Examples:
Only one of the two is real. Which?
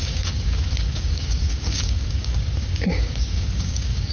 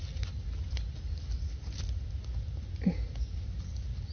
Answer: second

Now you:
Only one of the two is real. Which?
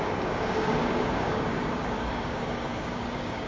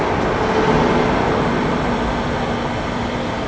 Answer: second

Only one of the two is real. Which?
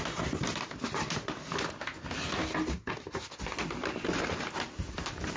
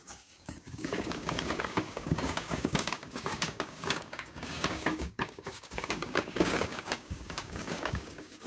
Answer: first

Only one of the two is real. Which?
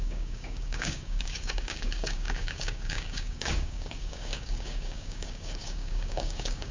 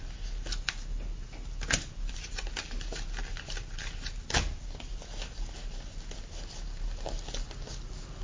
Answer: second